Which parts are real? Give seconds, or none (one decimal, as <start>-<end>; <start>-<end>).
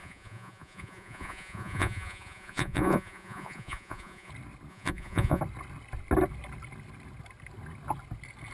4.3-4.7; 5.4-8.5